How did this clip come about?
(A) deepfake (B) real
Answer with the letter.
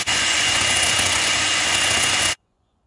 A